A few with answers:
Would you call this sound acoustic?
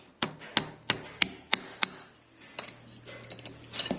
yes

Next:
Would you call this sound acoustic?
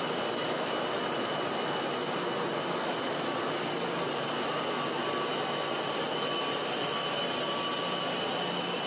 yes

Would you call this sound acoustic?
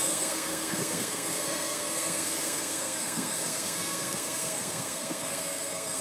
no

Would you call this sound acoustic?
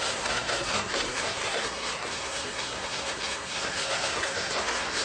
no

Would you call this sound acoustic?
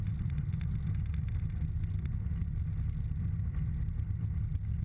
yes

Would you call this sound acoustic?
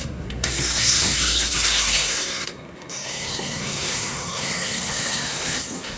no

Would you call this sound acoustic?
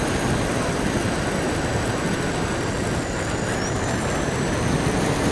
yes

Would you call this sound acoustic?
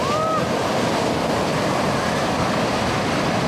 yes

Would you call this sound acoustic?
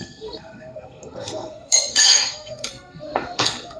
no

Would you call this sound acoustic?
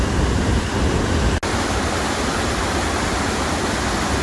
yes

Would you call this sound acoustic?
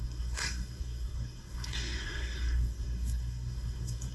no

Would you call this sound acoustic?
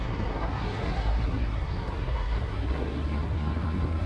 no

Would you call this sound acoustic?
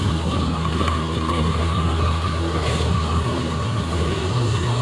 no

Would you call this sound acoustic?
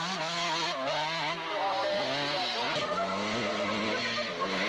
yes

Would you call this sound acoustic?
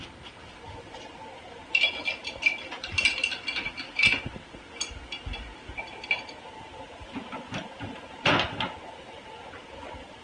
yes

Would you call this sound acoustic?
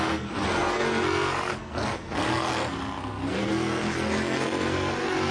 no